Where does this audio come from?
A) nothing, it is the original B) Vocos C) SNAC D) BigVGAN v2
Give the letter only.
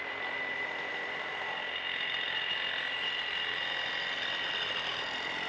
A